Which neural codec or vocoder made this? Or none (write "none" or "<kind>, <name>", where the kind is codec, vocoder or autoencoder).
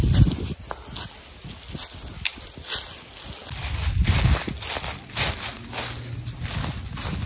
none